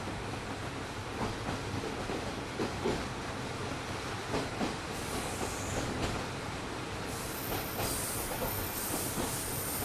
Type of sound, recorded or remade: recorded